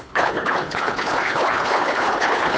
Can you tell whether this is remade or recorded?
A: remade